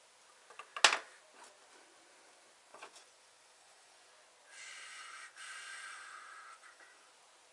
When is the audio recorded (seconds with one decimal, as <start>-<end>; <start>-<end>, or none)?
0.0-2.7; 4.1-4.9; 7.1-7.5